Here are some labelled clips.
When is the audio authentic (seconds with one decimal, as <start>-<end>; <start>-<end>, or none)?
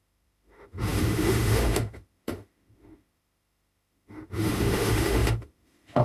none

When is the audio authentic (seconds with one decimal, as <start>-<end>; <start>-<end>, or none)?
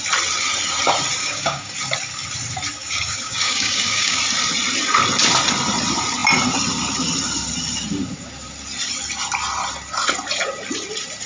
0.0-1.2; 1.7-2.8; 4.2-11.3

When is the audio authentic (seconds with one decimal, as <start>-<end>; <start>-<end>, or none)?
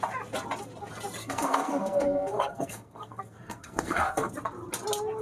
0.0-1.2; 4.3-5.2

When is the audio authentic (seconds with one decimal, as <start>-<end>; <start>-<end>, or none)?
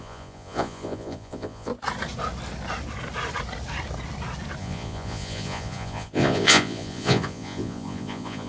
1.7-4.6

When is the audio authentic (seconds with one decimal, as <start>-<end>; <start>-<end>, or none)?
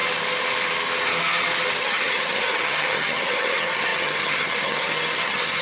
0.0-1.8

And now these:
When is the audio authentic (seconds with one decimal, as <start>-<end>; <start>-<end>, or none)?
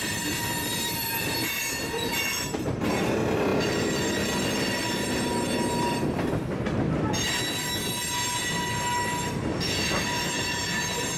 0.0-0.7; 1.6-2.1; 2.7-11.2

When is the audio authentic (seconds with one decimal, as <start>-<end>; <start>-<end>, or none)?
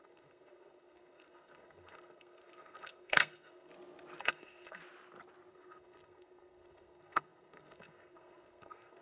3.7-4.2; 4.8-5.5